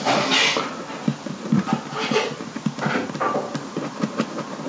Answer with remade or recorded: recorded